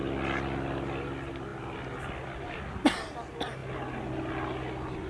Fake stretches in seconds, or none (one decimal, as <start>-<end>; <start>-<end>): none